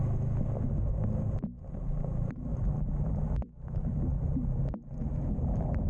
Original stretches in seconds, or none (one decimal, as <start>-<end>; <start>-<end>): 0.0-1.8